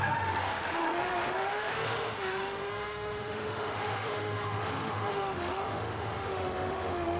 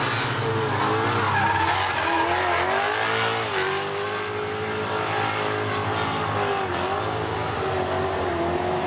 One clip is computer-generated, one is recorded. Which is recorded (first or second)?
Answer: second